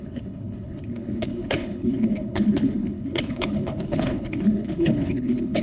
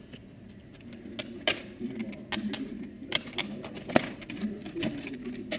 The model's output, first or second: first